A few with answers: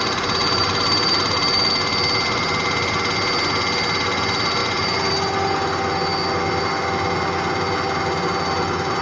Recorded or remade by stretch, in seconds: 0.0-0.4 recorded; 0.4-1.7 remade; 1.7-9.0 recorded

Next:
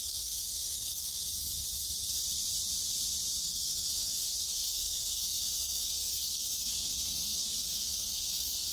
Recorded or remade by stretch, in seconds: 0.0-1.2 remade; 1.2-3.4 recorded; 3.4-8.7 remade